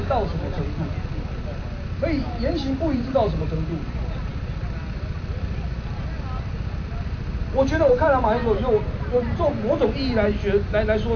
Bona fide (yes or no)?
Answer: yes